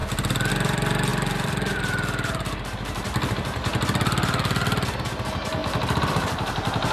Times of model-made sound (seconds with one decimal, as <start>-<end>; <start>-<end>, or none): 1.1-1.8; 5.6-6.5